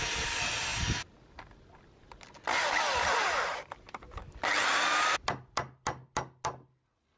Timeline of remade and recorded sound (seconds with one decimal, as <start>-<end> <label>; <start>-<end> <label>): 0.0-7.2 recorded